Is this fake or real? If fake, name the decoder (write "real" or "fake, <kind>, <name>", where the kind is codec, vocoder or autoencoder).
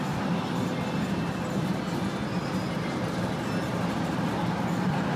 real